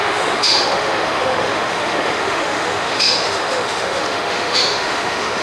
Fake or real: fake